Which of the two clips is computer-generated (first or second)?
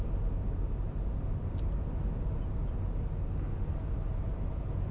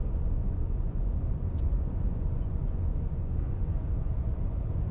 second